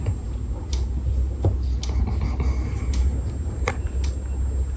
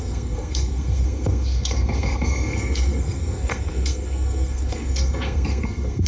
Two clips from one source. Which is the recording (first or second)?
first